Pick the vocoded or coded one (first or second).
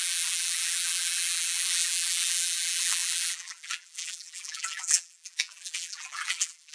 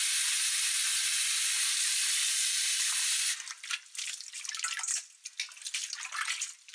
first